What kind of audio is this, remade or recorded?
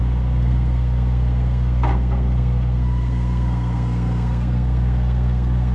remade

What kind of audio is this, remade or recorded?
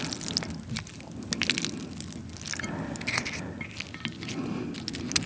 recorded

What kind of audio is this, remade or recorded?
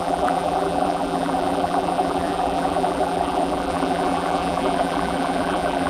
remade